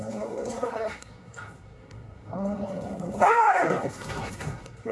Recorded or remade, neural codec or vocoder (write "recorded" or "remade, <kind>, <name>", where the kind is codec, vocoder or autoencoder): remade, codec, SNAC